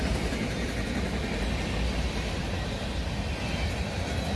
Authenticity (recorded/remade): recorded